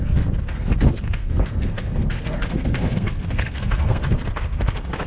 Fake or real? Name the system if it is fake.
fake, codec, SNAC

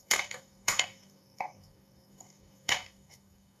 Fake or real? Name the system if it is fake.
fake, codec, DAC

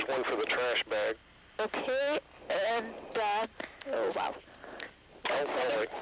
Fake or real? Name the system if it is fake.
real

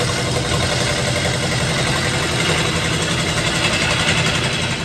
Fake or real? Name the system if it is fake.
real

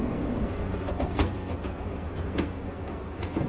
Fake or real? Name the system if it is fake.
fake, codec, SNAC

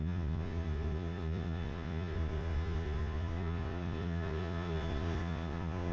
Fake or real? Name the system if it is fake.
fake, vocoder, Vocos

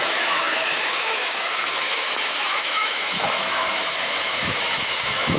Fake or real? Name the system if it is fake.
fake, autoencoder, DAC-VAE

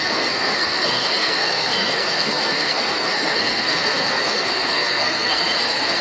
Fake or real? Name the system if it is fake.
fake, codec, SNAC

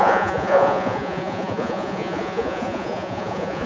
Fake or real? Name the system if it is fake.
fake, vocoder, Vocos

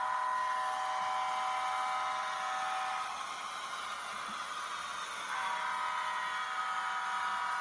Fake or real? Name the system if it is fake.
real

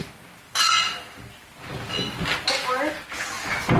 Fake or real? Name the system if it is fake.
real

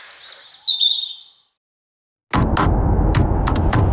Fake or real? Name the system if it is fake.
real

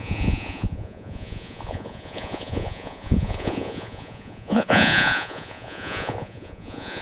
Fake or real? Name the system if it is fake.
fake, vocoder, Vocos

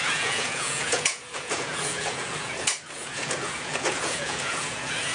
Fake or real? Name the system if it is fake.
fake, vocoder, Vocos